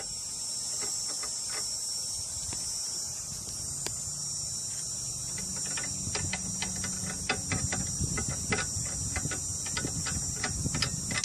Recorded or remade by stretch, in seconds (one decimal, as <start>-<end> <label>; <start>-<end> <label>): 0.0-11.2 recorded